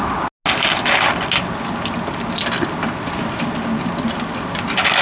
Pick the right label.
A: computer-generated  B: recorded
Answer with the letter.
B